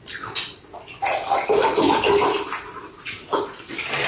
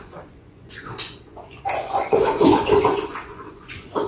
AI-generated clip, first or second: second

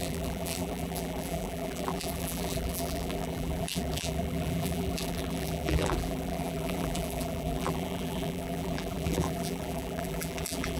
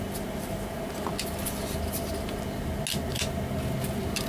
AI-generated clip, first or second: first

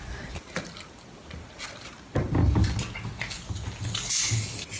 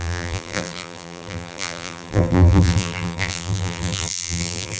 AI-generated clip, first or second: second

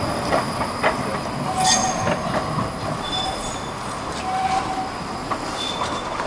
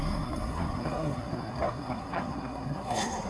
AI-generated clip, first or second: second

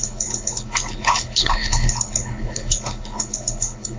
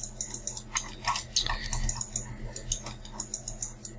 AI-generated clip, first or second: first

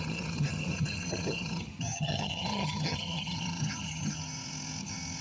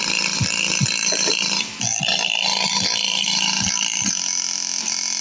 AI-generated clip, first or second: first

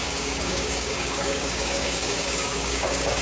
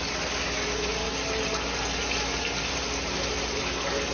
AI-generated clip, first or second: first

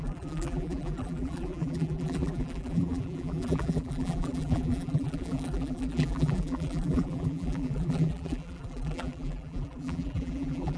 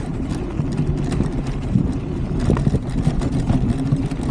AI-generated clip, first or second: first